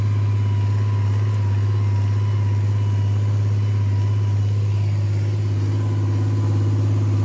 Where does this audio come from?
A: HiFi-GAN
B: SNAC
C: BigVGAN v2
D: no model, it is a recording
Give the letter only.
D